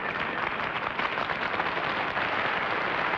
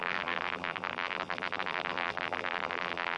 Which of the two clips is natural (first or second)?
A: first